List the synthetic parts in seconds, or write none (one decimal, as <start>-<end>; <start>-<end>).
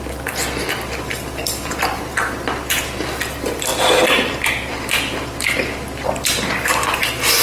0.0-7.4